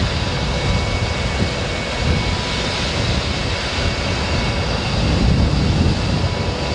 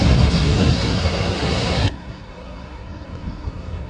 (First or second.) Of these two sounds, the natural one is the first